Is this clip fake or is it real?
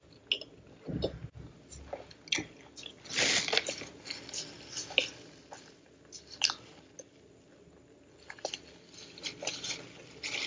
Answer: real